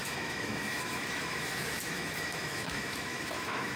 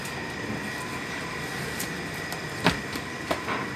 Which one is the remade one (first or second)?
first